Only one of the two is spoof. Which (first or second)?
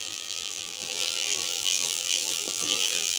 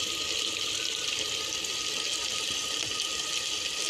first